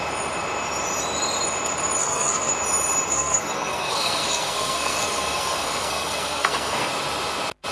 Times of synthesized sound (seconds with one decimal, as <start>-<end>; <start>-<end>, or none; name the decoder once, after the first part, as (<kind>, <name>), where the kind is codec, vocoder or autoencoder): 2.0-2.5 (codec, SNAC); 3.1-6.9